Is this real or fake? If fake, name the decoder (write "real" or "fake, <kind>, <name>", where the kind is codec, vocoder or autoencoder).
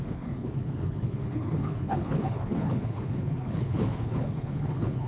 fake, codec, HILCodec